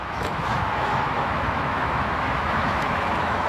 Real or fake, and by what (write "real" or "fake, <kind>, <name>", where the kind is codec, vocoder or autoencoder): fake, autoencoder, DAC-VAE